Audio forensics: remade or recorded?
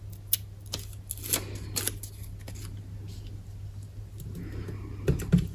recorded